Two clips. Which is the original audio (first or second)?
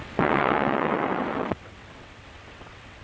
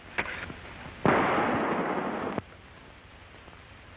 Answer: second